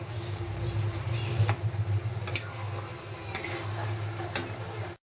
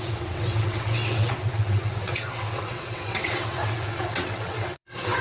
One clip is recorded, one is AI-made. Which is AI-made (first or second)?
second